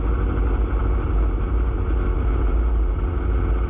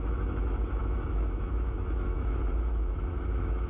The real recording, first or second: first